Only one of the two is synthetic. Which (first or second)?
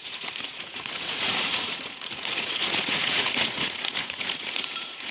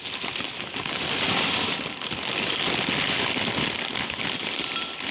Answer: first